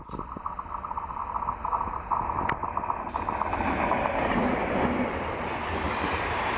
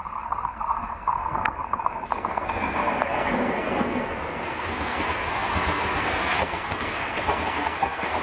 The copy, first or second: second